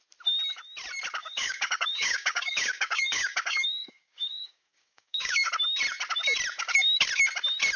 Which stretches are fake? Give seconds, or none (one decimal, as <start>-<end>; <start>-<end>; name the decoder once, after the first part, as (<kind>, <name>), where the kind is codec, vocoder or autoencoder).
1.2-5.5 (codec, DAC)